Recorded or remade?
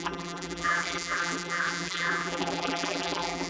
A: remade